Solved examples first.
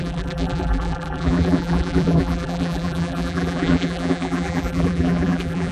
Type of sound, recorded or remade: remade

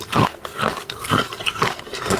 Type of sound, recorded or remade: remade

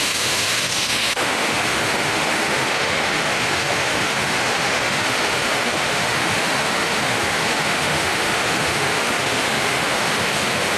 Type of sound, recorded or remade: remade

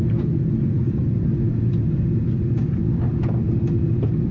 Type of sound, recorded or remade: recorded